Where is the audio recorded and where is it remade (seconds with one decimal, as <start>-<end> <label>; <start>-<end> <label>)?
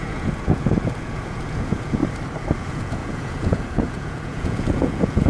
0.0-2.0 remade; 2.0-2.6 recorded; 2.6-5.3 remade